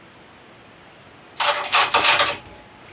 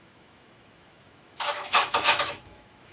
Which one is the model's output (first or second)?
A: second